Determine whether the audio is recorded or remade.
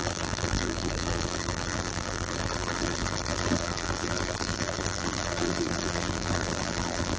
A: remade